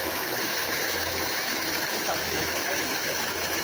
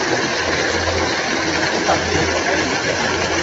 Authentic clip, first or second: second